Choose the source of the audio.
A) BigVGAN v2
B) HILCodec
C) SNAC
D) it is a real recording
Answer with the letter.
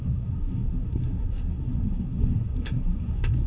C